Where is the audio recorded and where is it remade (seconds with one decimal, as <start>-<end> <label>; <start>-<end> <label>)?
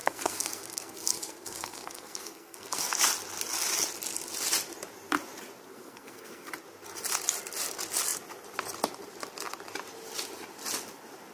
0.0-2.9 remade; 2.9-5.7 recorded; 5.7-6.5 remade; 6.5-11.3 recorded